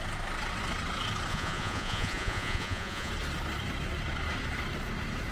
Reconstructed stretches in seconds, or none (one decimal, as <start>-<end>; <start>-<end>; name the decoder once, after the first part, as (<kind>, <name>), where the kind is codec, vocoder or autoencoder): 1.3-3.1 (vocoder, Vocos)